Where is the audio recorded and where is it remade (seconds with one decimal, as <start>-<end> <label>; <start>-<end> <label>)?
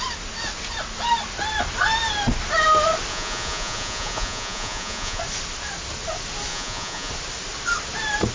0.0-3.1 recorded; 3.1-5.2 remade; 5.2-6.5 recorded; 6.5-7.1 remade; 7.1-8.3 recorded